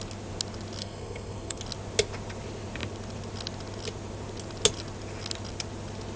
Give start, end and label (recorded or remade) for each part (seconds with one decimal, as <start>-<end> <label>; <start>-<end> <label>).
0.0-0.8 recorded; 0.8-1.6 remade; 1.6-6.2 recorded